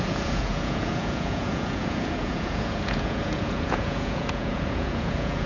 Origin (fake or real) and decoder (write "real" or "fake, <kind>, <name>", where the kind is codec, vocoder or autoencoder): fake, vocoder, Vocos